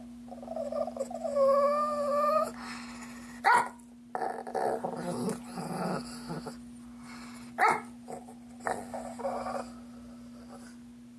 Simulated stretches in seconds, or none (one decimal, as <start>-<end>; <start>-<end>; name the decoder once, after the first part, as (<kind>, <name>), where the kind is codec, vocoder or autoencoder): none